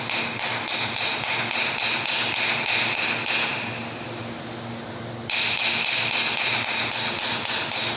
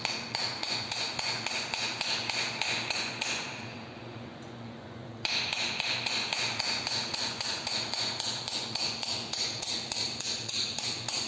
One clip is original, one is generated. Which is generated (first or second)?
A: second